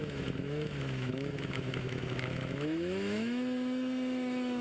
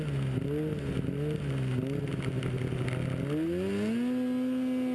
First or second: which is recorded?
second